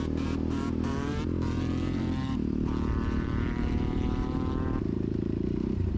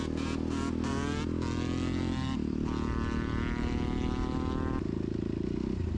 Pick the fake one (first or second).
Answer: first